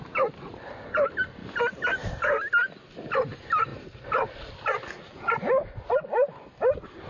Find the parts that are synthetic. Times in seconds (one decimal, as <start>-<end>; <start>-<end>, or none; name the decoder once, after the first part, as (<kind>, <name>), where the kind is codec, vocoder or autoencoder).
none

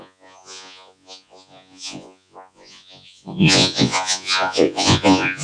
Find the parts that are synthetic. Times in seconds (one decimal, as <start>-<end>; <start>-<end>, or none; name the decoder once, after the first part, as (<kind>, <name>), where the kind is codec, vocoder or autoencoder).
0.0-5.4 (vocoder, Vocos)

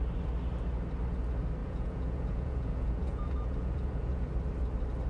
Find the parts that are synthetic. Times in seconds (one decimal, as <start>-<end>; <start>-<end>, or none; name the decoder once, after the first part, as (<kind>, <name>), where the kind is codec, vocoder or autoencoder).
1.6-4.3 (vocoder, Vocos)

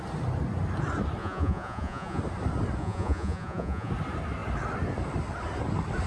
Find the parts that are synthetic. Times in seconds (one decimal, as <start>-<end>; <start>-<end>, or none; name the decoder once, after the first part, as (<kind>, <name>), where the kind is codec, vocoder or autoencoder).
1.2-2.2 (vocoder, Vocos); 2.8-3.9

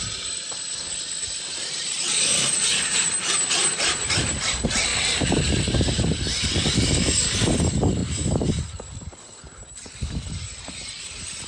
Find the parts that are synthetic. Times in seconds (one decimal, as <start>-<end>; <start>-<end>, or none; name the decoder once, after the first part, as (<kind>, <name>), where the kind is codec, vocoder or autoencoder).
none